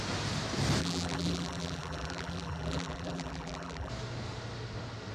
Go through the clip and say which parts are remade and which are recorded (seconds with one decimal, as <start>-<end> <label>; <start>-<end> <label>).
0.0-0.8 recorded; 0.8-3.9 remade; 3.9-5.1 recorded